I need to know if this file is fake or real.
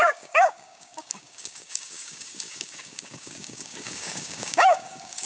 fake